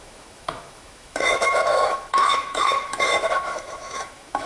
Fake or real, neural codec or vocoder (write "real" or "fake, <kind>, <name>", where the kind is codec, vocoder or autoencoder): fake, autoencoder, DAC-VAE